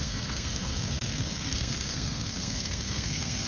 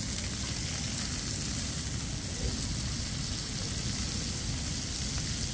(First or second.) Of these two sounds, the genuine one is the second